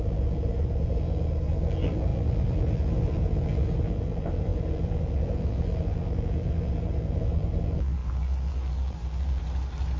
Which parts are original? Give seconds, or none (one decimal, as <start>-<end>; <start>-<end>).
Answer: 9.4-10.0